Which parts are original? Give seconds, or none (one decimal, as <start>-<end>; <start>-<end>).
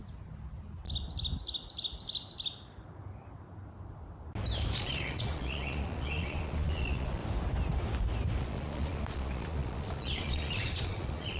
0.0-4.8; 7.2-8.4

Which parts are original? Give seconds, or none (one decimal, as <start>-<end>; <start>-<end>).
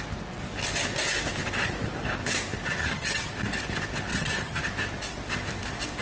0.0-2.8; 3.3-4.1; 4.6-6.0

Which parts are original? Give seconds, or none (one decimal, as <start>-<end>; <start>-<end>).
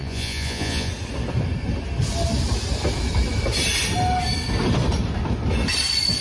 0.9-6.2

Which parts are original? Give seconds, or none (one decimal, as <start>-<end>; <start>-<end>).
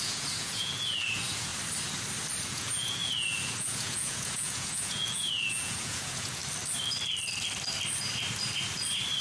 1.5-2.4; 6.4-9.2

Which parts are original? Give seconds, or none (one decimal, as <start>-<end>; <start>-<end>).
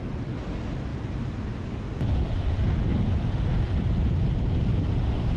0.0-5.4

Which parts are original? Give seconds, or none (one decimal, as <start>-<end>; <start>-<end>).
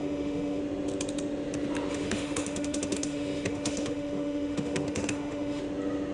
0.6-1.9; 5.6-6.1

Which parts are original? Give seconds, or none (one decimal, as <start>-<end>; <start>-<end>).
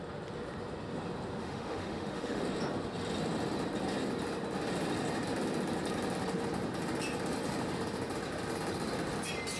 0.0-1.4; 2.4-9.6